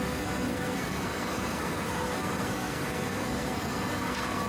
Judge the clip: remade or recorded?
remade